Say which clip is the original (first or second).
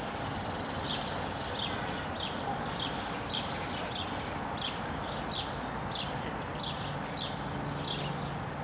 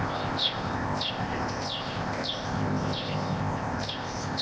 first